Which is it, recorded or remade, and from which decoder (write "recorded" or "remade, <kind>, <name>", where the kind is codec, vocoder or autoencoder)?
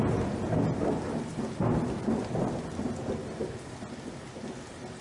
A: recorded